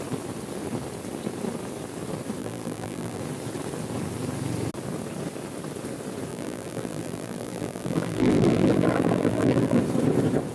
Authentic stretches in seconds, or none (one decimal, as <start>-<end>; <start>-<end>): 0.0-2.4; 3.2-6.3; 9.8-10.5